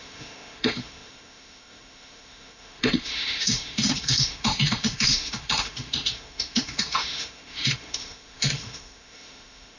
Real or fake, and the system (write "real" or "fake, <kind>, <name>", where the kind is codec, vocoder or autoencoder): fake, autoencoder, DAC-VAE